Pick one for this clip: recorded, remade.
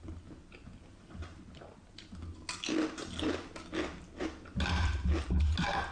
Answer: recorded